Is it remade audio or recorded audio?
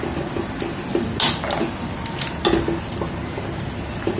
recorded